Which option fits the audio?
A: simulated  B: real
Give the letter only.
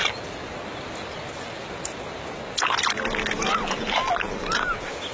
B